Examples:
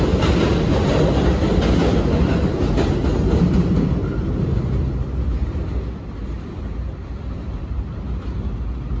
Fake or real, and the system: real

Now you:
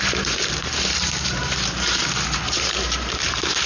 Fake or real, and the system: fake, vocoder, BigVGAN v2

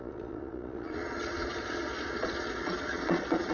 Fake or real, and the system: fake, vocoder, Vocos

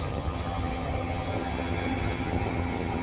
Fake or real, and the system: fake, vocoder, HiFi-GAN